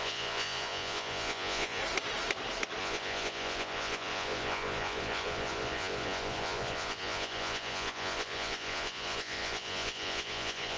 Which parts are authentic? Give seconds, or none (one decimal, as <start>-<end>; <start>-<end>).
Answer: 1.8-2.8